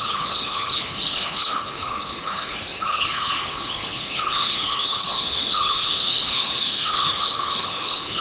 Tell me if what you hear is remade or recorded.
remade